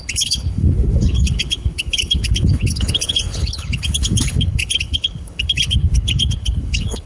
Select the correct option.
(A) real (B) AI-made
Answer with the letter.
B